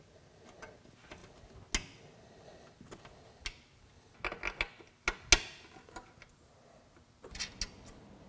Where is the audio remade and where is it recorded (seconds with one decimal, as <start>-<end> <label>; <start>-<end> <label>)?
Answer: 0.0-8.3 recorded